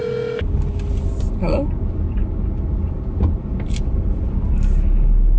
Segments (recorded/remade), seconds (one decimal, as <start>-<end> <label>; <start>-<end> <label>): 0.0-5.4 recorded